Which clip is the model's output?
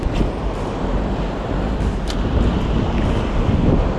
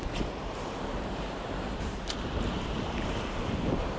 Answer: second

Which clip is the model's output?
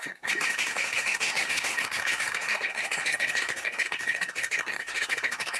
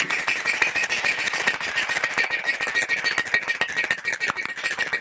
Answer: first